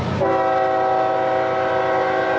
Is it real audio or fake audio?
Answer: real